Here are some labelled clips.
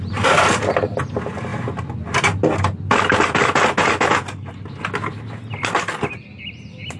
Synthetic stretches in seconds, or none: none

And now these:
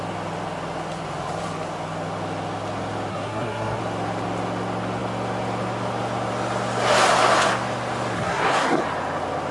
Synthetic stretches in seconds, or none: 3.1-3.8 (codec, SNAC); 8.2-8.8

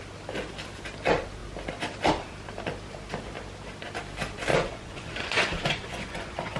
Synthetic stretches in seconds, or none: 4.5-6.6 (vocoder, Vocos)

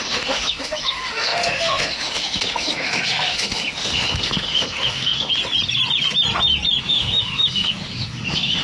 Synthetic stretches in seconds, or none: 0.0-5.3 (autoencoder, DAC-VAE); 6.8-8.6

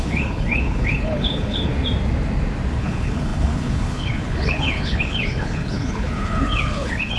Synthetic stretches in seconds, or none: 0.0-1.7 (codec, HILCodec); 2.8-7.2

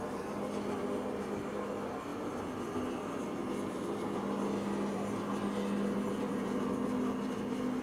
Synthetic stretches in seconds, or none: none